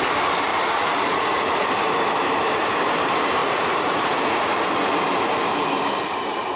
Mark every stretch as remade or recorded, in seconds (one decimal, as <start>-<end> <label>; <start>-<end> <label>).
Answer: 0.0-0.5 recorded; 0.5-1.7 remade; 1.7-3.4 recorded; 3.4-4.5 remade; 4.5-6.6 recorded